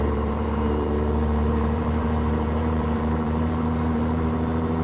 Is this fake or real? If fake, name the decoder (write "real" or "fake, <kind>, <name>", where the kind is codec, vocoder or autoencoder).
fake, vocoder, BigVGAN v2